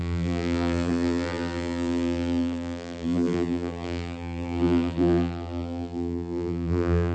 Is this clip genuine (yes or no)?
no